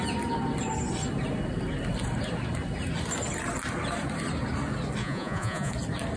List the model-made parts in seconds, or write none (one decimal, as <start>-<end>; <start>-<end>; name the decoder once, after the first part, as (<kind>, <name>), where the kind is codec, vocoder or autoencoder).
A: 5.0-5.7 (vocoder, Vocos)